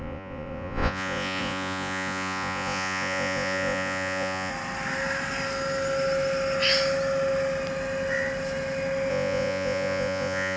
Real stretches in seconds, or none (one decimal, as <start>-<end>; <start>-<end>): 4.5-9.1